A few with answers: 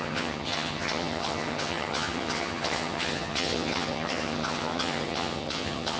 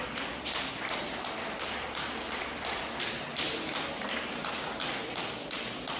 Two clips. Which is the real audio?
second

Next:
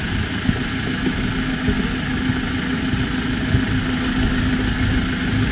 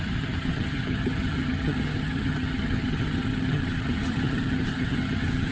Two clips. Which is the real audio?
first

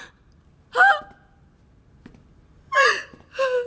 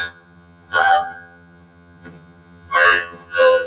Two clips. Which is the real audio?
first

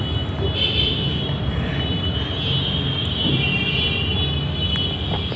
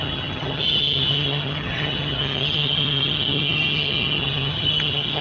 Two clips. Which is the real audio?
first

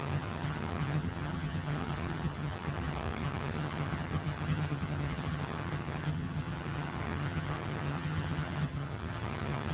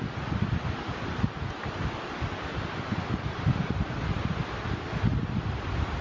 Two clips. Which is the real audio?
second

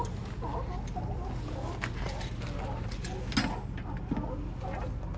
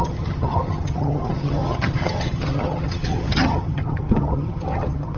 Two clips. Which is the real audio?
first